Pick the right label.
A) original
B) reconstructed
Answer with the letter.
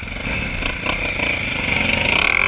A